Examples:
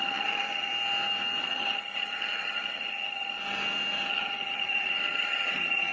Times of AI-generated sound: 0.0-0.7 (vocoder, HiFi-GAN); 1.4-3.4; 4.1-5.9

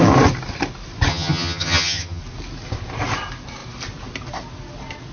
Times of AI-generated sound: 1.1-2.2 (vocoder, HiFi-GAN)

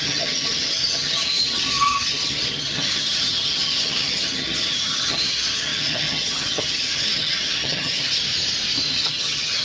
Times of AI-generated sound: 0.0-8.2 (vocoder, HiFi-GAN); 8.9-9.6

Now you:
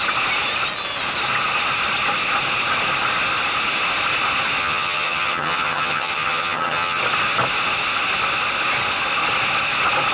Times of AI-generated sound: 4.6-7.0 (vocoder, HiFi-GAN)

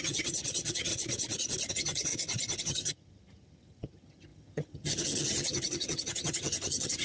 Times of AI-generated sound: 0.0-0.9 (vocoder, HiFi-GAN); 1.7-2.1; 2.6-7.0

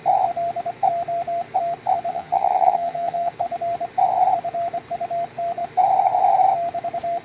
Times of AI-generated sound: 2.1-3.3 (vocoder, HiFi-GAN)